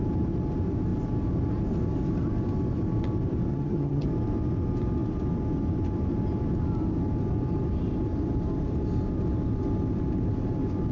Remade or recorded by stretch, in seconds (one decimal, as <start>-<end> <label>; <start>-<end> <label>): 0.0-3.5 recorded; 3.5-4.1 remade; 4.1-10.9 recorded